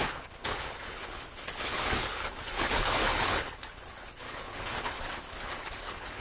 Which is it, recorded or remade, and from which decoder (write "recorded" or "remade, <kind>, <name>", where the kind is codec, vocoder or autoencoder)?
remade, codec, HILCodec